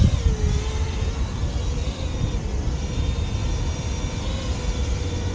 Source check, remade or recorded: recorded